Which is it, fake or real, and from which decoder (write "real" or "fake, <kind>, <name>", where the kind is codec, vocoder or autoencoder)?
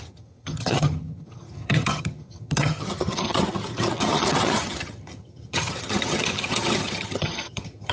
fake, vocoder, HiFi-GAN